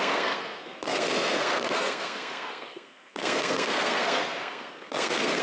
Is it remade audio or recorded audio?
remade